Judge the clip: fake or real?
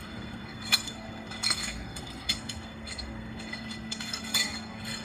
fake